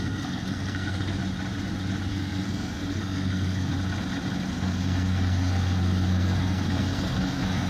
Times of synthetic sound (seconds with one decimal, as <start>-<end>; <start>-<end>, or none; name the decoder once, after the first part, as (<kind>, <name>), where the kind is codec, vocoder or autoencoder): 0.0-1.2 (codec, SNAC); 2.1-3.7; 4.5-7.7